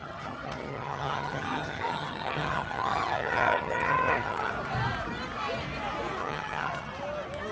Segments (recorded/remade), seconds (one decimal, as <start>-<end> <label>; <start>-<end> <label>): 0.0-4.5 remade; 4.5-6.2 recorded; 6.2-6.9 remade; 6.9-7.5 recorded